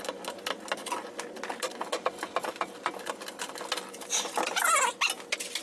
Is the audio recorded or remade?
recorded